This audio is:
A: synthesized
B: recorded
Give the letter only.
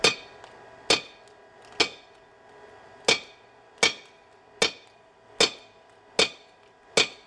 B